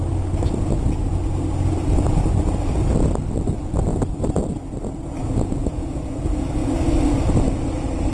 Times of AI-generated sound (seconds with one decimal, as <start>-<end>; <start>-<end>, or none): 5.2-6.0